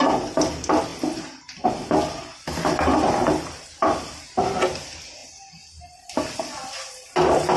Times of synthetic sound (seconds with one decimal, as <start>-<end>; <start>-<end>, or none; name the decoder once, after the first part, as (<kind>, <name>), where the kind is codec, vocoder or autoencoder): none